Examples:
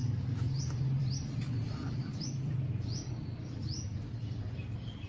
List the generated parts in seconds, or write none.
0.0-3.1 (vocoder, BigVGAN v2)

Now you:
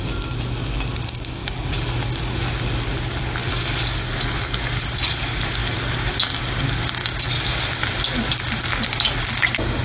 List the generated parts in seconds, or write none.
none

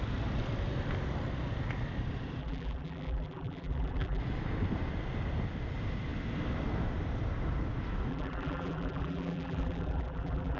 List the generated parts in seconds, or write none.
2.4-4.2 (vocoder, BigVGAN v2); 8.1-10.6

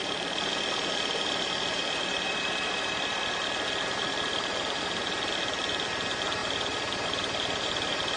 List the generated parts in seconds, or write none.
0.0-0.5 (vocoder, BigVGAN v2); 1.8-5.3; 6.4-8.2

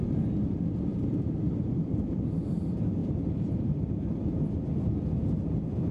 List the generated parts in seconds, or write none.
0.9-2.4 (vocoder, BigVGAN v2); 3.0-3.9